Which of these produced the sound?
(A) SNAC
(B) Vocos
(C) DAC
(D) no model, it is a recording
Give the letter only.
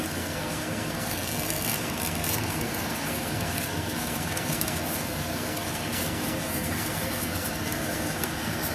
A